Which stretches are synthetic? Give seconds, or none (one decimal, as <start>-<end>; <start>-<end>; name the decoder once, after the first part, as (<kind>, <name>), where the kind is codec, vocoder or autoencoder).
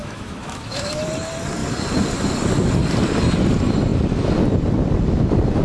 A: 0.0-1.0 (autoencoder, DAC-VAE)